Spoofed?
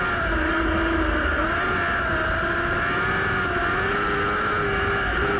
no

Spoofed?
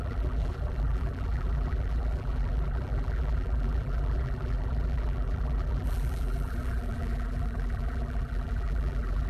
yes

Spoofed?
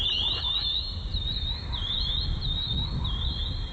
no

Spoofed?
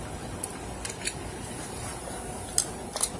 no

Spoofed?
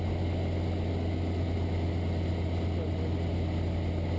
no